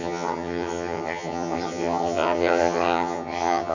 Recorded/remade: remade